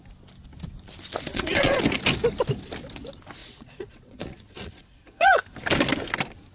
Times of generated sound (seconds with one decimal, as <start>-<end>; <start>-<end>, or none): 1.3-1.8; 3.4-5.4

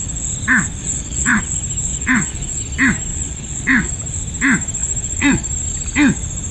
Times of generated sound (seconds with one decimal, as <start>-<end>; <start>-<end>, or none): 0.8-1.4; 1.9-2.6; 3.1-3.9; 4.8-5.5

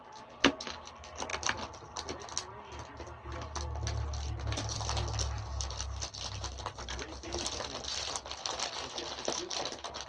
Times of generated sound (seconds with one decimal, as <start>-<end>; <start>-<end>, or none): none

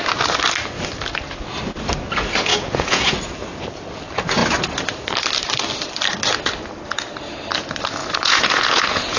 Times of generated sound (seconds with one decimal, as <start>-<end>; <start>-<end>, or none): 2.5-3.1; 8.0-9.2

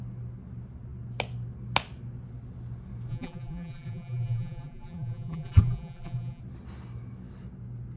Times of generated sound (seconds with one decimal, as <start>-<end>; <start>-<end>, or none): 3.1-6.4

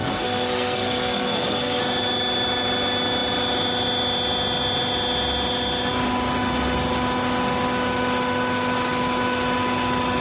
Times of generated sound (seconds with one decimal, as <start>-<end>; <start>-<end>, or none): 0.0-1.8

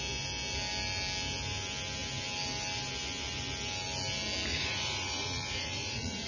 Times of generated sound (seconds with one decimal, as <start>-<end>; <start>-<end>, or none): 4.5-6.3

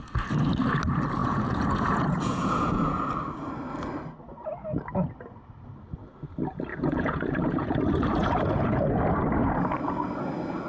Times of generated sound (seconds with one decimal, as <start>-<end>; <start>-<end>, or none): 1.2-3.0; 6.7-7.8; 8.2-8.8